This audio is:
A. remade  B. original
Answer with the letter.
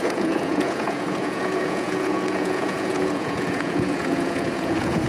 A